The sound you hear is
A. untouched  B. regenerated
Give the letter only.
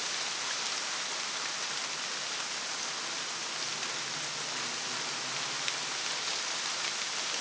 A